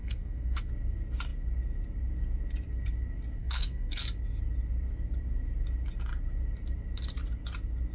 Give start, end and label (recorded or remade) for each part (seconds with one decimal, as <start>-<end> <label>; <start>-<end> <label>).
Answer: 0.0-0.7 remade; 0.7-3.4 recorded; 3.4-4.0 remade; 4.0-7.9 recorded